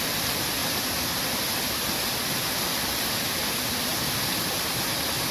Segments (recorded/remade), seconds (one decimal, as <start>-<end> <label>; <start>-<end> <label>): 0.0-5.3 recorded

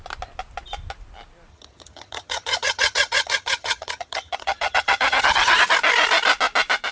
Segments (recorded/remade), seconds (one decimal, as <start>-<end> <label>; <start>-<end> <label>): 0.0-1.5 recorded; 1.5-5.6 remade; 5.6-6.9 recorded